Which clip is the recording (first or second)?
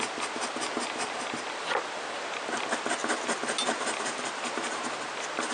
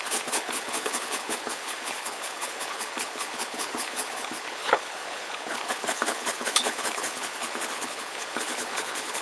first